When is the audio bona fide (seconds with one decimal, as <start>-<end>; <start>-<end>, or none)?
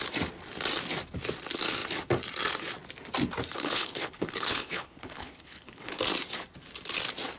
0.0-3.6; 6.0-7.4